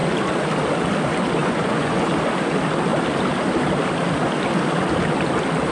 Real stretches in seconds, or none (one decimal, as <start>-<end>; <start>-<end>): 0.0-1.4; 2.1-5.7